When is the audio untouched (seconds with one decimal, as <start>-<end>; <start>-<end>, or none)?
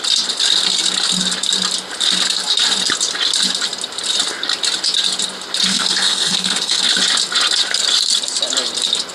0.0-5.7; 6.8-9.1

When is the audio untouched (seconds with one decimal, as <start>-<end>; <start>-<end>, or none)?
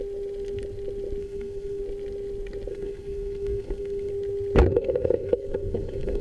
0.0-1.2; 1.8-2.7; 4.1-4.7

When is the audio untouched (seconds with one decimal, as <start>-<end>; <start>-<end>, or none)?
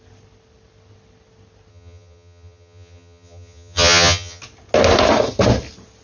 0.0-1.7; 4.4-6.0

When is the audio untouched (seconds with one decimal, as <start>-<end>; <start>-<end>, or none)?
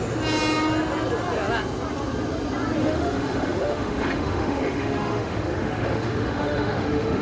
0.0-2.8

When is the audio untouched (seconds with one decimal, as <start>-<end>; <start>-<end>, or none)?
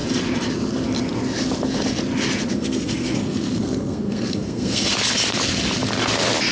0.0-2.5; 4.9-6.5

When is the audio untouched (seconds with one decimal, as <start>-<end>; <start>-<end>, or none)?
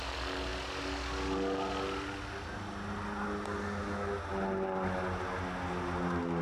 0.0-6.4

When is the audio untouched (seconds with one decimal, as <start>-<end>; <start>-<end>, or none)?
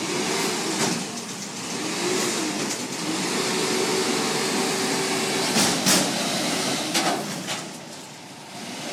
0.0-8.9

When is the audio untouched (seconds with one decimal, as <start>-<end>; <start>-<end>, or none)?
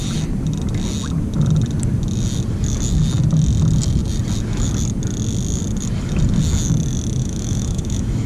0.0-7.2